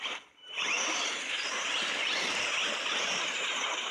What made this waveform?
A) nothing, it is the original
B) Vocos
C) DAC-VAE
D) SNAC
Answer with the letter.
A